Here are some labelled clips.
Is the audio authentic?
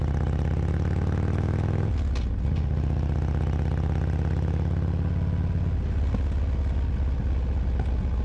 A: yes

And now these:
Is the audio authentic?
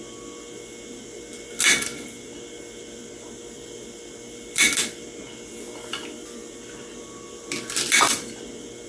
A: yes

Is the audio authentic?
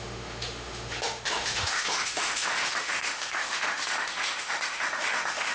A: no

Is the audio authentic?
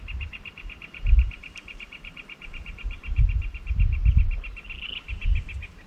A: yes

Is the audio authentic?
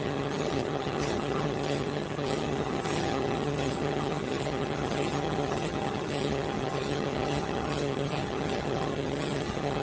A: no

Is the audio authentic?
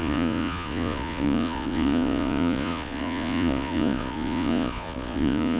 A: no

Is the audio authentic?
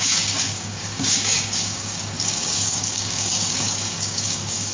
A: no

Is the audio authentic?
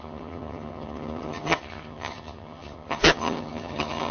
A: no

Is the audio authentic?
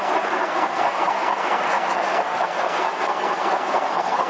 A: no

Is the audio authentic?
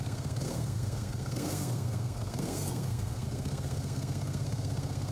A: no